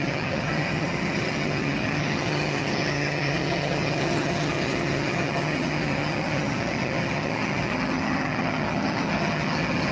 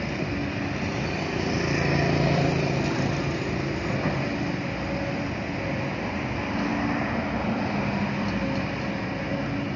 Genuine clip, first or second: second